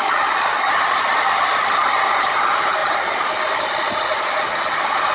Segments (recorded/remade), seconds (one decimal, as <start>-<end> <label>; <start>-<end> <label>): 0.0-5.1 recorded